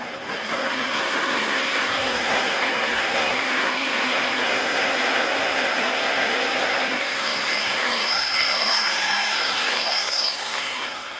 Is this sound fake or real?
fake